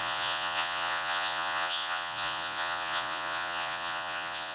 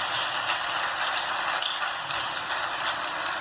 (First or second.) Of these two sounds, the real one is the second